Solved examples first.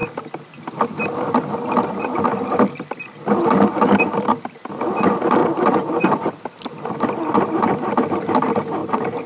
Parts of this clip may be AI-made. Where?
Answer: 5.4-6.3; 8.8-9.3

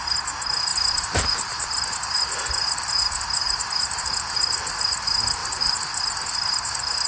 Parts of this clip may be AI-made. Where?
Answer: 3.4-4.1; 5.4-6.0

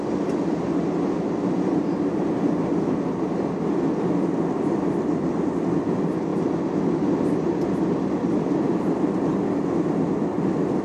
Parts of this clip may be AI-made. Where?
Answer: none

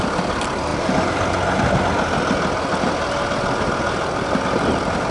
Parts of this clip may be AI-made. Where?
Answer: none

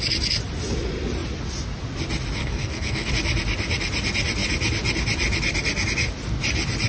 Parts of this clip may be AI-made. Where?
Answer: 2.4-3.1

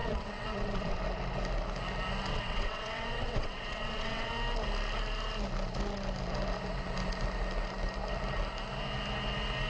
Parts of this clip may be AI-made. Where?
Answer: 0.0-1.0; 2.3-4.3